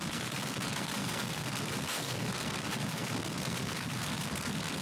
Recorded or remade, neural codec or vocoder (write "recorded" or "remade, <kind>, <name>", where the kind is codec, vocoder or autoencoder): remade, codec, SNAC